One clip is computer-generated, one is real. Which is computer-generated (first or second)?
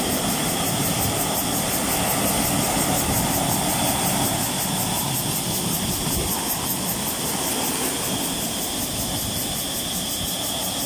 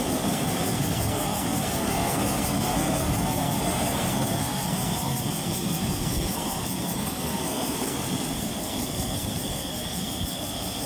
second